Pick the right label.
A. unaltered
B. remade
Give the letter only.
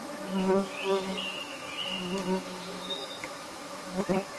B